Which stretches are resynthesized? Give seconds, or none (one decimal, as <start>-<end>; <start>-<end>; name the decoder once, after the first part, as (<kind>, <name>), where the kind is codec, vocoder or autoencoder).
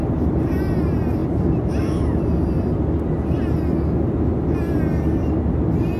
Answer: none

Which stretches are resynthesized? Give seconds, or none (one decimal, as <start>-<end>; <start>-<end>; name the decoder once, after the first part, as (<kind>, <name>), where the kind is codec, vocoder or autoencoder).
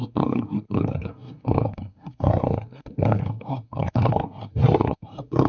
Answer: 0.0-5.5 (codec, SNAC)